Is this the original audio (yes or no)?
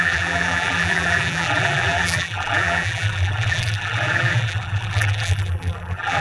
no